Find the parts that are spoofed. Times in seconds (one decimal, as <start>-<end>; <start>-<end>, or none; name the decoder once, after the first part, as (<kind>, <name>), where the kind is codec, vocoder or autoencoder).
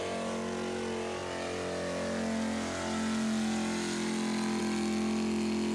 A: none